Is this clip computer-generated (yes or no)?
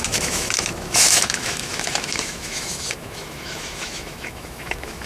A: yes